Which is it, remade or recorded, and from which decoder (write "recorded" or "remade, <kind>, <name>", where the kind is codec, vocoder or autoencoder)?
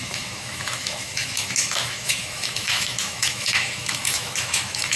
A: remade, autoencoder, DAC-VAE